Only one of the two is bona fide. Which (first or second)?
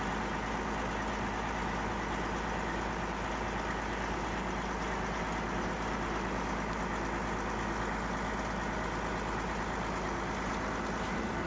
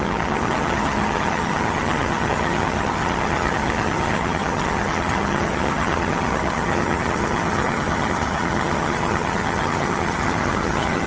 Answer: first